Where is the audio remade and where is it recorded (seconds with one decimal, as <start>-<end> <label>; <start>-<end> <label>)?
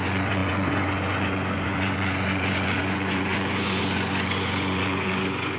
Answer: 0.0-5.6 remade